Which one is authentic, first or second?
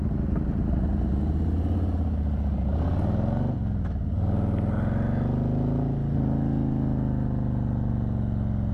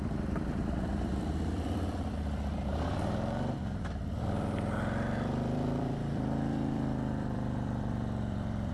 first